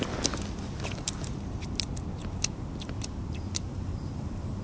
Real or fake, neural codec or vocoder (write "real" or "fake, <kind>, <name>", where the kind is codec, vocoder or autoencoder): fake, vocoder, BigVGAN v2